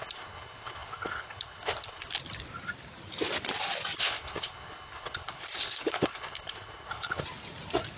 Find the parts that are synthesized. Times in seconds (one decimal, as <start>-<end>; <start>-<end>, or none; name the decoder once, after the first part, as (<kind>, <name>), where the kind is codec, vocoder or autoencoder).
0.0-2.2 (codec, HILCodec); 4.0-7.2

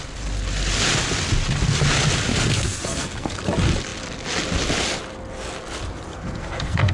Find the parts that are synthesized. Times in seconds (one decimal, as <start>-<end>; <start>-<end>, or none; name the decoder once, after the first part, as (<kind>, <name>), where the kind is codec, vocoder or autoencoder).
2.3-3.4 (codec, SNAC); 6.1-6.9

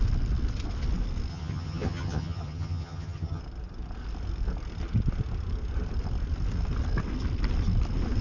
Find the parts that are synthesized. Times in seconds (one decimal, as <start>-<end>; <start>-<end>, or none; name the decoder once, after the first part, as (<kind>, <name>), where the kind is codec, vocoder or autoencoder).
1.3-3.4 (vocoder, HiFi-GAN)

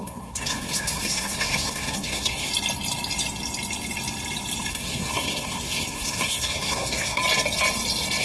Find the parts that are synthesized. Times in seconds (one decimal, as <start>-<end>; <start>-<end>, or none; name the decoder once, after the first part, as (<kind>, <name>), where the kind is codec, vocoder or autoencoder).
0.0-2.5 (codec, SNAC); 4.7-7.2

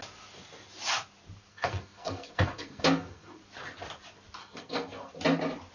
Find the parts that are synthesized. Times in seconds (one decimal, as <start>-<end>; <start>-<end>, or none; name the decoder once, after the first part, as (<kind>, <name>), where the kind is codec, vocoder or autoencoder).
1.5-3.4 (codec, SNAC); 4.4-5.1

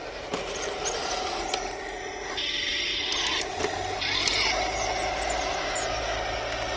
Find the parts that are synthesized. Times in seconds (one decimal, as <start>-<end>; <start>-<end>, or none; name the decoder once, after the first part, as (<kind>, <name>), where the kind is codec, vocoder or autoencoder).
none

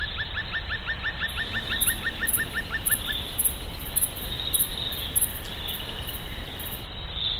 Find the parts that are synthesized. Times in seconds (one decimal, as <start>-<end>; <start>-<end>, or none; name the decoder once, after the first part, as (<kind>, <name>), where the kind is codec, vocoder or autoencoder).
none

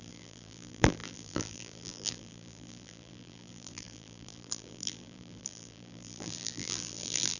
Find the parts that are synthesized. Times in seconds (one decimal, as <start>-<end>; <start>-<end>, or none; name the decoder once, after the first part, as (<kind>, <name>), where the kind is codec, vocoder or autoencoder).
0.0-7.4 (vocoder, BigVGAN v2)